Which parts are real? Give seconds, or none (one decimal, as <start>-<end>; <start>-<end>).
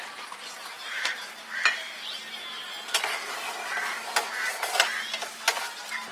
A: 1.1-1.7; 2.2-6.1